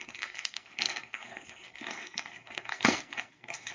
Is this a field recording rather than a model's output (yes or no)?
no